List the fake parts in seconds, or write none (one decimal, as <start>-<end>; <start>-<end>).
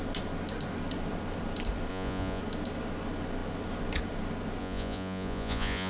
1.9-2.4; 4.6-5.9